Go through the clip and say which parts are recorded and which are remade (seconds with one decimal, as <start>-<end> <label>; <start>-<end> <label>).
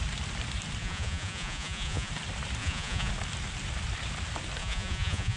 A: 0.0-0.8 recorded; 0.8-2.1 remade; 2.1-2.6 recorded; 2.6-3.1 remade; 3.1-4.6 recorded; 4.6-5.4 remade